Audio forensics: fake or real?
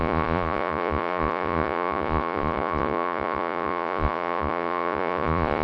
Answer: fake